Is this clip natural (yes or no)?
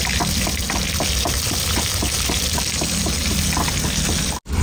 yes